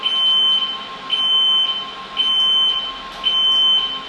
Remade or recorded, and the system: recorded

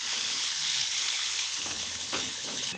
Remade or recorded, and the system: remade, codec, HILCodec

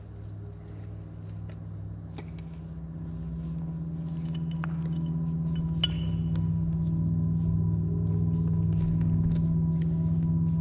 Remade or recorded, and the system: recorded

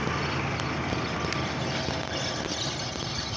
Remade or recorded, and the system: recorded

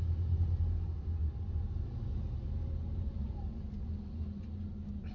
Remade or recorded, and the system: recorded